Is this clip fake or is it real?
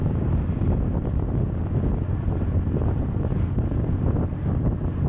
real